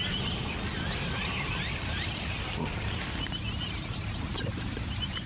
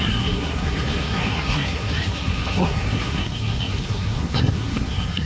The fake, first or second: second